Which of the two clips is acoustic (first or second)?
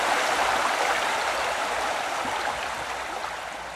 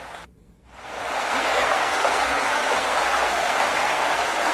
first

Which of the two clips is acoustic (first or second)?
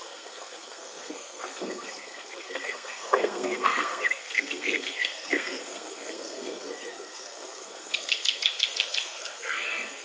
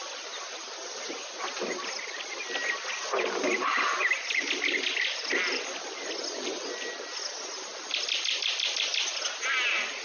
second